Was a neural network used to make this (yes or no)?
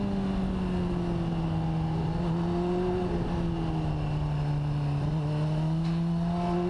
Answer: no